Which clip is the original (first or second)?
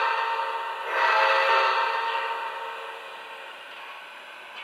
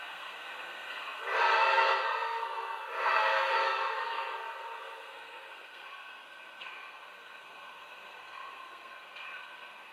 first